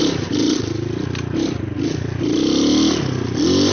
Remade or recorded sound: recorded